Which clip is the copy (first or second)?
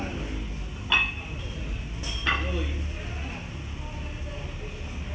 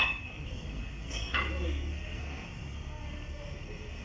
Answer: second